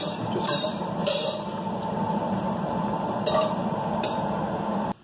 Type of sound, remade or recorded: remade